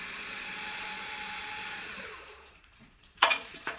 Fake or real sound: fake